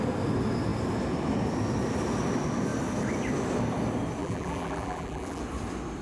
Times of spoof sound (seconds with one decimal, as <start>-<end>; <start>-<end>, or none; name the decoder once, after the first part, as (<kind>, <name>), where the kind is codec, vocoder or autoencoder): 4.2-5.4 (vocoder, BigVGAN v2)